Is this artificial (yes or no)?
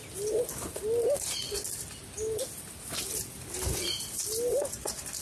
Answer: no